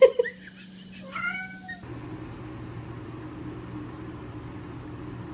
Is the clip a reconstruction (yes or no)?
no